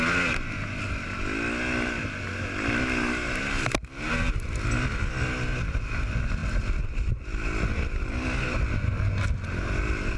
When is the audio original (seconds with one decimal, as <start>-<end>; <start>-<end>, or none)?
0.0-10.2

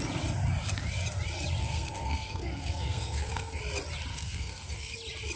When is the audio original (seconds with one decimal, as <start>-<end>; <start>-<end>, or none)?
0.0-1.6; 3.6-4.1; 4.9-5.4

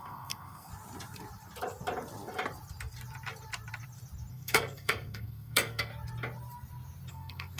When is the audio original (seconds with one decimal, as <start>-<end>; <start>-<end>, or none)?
0.7-4.3; 5.9-7.1

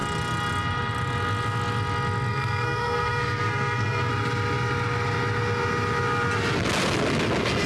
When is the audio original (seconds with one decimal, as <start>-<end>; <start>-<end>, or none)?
0.0-2.3; 4.1-7.7